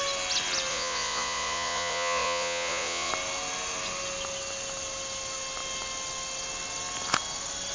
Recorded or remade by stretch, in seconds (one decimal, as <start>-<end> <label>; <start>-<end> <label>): 0.0-0.7 recorded; 0.7-3.1 remade; 3.1-7.7 recorded